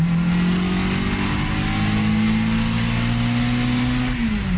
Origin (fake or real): real